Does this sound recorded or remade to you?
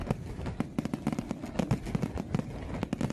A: recorded